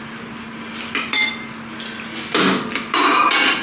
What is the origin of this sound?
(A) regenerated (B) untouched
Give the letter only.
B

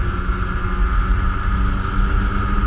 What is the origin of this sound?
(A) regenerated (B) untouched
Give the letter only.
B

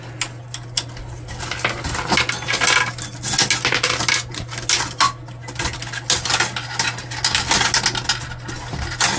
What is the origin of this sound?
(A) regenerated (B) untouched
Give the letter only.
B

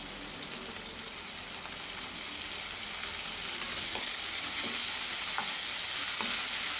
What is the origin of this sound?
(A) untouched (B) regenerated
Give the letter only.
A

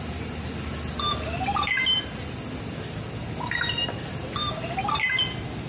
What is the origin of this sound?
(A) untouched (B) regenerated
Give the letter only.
A